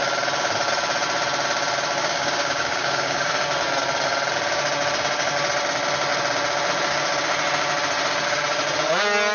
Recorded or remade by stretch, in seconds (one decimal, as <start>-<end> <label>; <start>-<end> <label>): 0.0-2.0 recorded; 2.0-3.3 remade; 3.3-9.3 recorded